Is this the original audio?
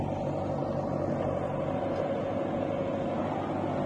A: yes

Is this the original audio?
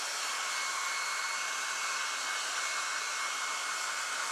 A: yes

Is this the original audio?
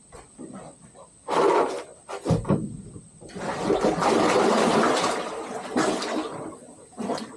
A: yes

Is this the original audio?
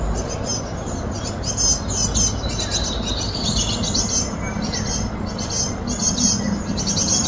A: yes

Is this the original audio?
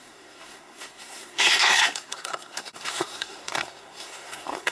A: no